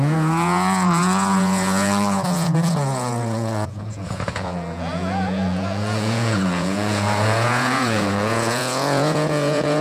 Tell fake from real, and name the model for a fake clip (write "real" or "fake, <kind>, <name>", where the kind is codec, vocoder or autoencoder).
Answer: fake, vocoder, Vocos